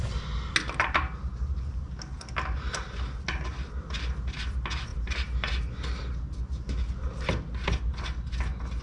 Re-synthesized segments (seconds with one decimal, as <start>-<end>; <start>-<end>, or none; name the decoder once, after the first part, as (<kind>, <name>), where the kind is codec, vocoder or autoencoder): none